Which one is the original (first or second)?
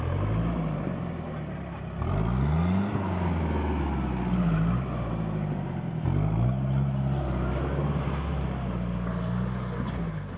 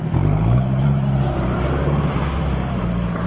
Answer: first